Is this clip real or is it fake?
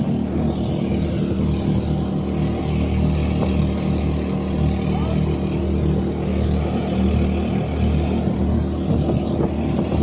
real